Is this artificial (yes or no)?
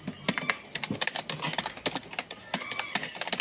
no